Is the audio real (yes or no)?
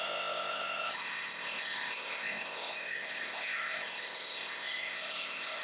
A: no